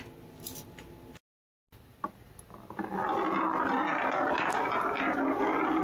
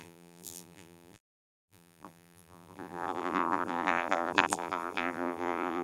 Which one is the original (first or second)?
first